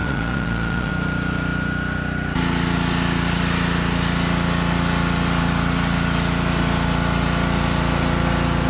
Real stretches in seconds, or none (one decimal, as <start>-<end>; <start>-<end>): 0.9-8.7

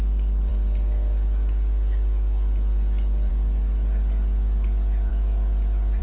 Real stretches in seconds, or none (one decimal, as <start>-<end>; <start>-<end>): 0.0-6.0

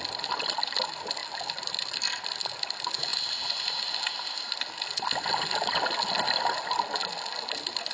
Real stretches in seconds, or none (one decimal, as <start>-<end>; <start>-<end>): 0.0-3.1; 3.8-7.9